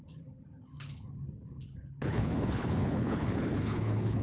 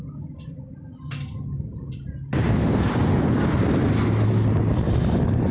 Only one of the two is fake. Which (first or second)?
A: first